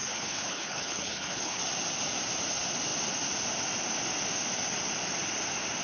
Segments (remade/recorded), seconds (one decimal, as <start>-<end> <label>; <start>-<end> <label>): 0.0-1.6 remade; 1.6-5.8 recorded